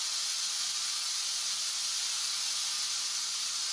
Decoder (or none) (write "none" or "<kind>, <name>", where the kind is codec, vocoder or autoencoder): none